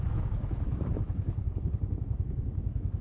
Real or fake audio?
fake